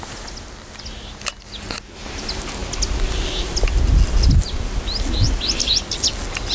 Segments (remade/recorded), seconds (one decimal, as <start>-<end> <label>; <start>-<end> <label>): 0.0-6.5 recorded